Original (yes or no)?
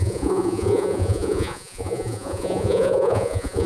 no